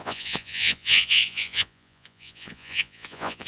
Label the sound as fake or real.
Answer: fake